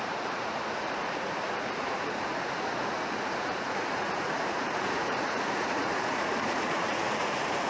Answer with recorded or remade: remade